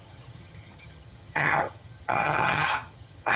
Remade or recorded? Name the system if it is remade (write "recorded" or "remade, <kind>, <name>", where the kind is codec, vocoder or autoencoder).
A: remade, vocoder, HiFi-GAN